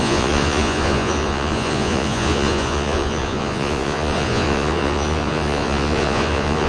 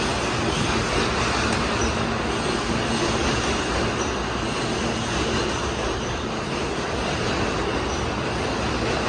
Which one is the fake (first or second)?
first